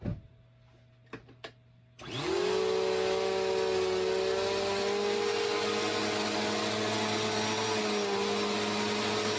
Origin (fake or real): real